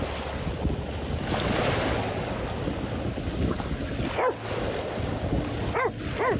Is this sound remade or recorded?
recorded